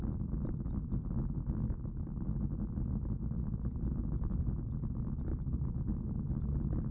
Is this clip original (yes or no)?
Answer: yes